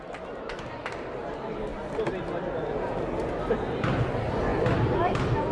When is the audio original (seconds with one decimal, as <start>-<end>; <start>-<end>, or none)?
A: 0.0-5.5